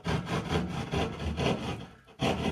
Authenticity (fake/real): real